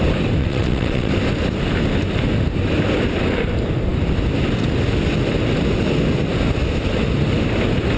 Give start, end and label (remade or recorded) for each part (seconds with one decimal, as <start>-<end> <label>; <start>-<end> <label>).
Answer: 0.0-0.4 recorded; 0.4-1.1 remade; 1.1-8.0 recorded